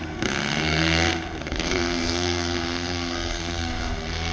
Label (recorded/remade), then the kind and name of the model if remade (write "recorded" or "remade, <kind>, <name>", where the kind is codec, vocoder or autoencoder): remade, codec, SNAC